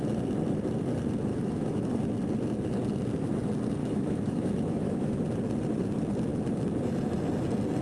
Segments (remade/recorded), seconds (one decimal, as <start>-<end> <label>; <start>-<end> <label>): 0.0-1.3 recorded; 1.3-1.9 remade; 1.9-3.8 recorded; 3.8-5.2 remade; 5.2-7.8 recorded